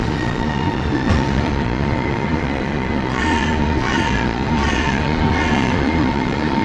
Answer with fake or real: fake